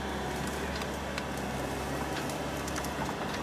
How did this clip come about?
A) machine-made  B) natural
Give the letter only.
B